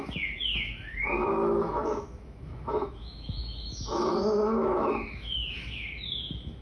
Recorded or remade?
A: remade